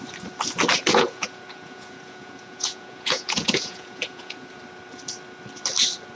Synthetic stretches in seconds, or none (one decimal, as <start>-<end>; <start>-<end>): 0.9-4.6